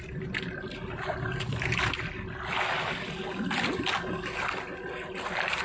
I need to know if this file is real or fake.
real